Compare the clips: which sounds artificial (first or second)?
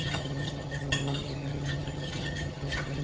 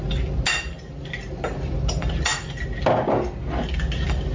first